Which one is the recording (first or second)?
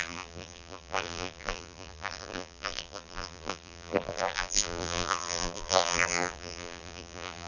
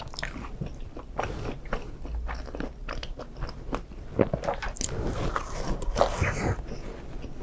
second